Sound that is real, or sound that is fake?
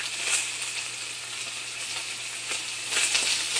real